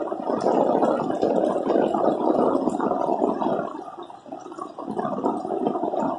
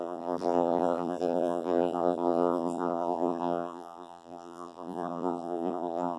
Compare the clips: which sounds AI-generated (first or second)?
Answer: second